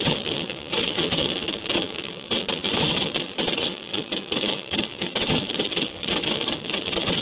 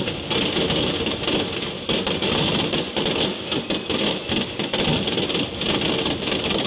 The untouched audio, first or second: second